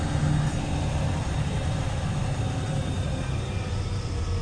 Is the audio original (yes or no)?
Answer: yes